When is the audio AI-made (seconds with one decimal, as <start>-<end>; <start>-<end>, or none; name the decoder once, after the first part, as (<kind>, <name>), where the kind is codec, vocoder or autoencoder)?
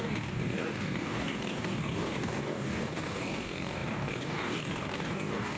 0.0-5.6 (codec, DAC)